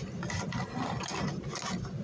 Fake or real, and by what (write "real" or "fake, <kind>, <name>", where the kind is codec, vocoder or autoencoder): real